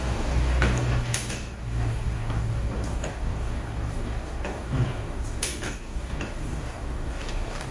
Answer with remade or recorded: remade